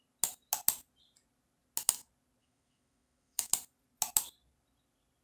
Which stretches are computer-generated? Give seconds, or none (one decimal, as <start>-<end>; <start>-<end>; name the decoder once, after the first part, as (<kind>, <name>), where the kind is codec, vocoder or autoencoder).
2.4-3.5 (autoencoder, DAC-VAE)